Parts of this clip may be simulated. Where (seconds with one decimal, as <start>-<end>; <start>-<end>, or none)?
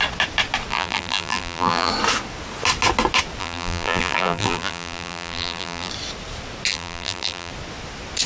0.7-1.9; 3.4-5.9; 6.7-7.5